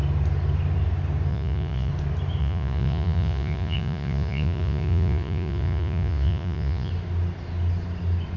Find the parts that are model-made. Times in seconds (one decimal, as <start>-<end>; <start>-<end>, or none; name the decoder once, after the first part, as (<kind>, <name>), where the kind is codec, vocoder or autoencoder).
1.3-1.9 (vocoder, Vocos); 2.4-6.9